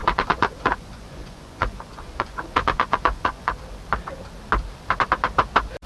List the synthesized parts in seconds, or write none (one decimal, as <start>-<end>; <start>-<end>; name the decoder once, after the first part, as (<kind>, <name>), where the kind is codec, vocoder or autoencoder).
0.0-3.5 (vocoder, Vocos)